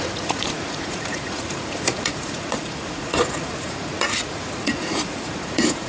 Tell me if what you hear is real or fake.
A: fake